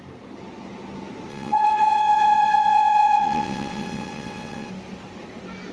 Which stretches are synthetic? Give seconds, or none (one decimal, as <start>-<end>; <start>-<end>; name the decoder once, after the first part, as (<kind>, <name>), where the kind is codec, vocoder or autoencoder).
1.3-4.7 (vocoder, WaveNeXt)